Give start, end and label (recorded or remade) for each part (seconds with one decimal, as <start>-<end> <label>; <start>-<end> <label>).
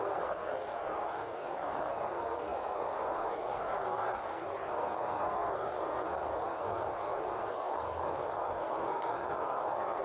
0.0-10.0 remade